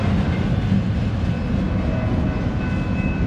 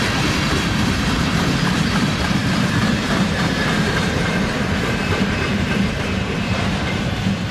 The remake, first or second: second